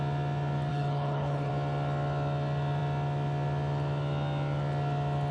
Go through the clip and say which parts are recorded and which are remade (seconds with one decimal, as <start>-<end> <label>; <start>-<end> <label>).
0.0-0.7 recorded; 0.7-1.5 remade; 1.5-5.3 recorded